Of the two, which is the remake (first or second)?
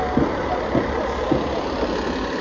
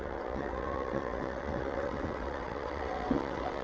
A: second